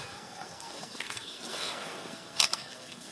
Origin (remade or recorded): remade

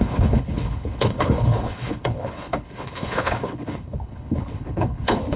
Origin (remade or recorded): remade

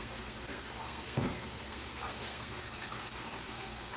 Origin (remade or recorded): remade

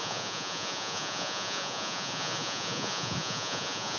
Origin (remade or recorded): remade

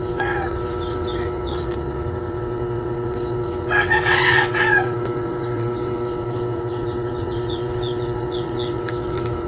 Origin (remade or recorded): remade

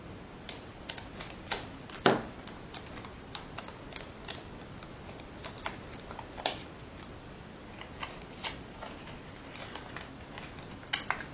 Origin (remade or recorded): recorded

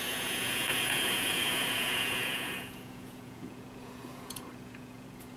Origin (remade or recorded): remade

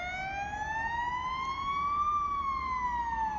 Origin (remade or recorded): recorded